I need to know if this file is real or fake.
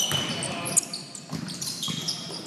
real